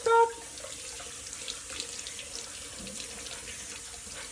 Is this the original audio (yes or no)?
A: yes